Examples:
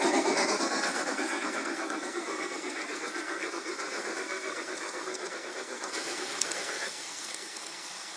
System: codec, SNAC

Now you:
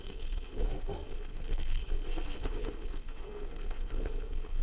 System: codec, SNAC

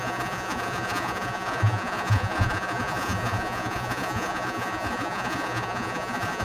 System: vocoder, Vocos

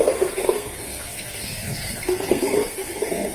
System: codec, SNAC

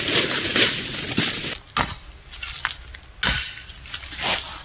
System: none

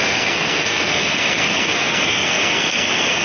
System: codec, SNAC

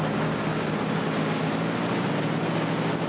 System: none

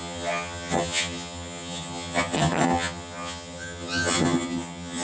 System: vocoder, HiFi-GAN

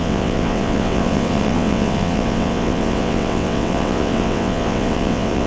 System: vocoder, WaveNeXt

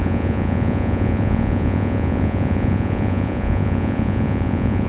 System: vocoder, Vocos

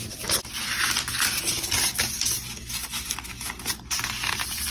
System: none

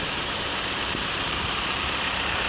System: vocoder, BigVGAN v2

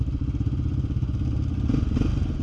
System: none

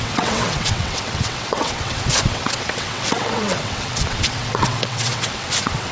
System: vocoder, WaveNeXt